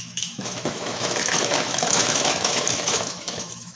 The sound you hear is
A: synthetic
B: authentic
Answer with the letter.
A